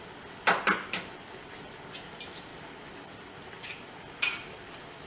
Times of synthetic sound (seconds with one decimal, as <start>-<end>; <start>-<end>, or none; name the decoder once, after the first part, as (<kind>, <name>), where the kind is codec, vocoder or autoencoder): none